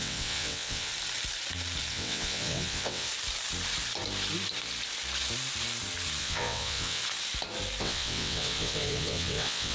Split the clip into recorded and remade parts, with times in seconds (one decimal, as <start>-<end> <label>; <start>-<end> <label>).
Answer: 0.0-0.9 remade; 0.9-1.9 recorded; 1.9-3.1 remade; 3.1-6.2 recorded; 6.2-7.0 remade; 7.0-7.8 recorded; 7.8-9.7 remade